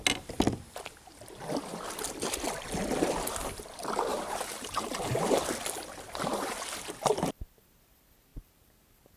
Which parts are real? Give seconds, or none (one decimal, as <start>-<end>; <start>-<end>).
0.0-4.1; 5.3-8.3